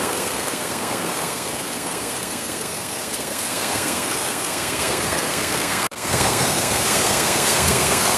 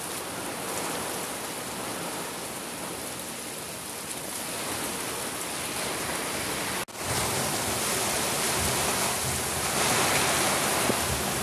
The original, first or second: second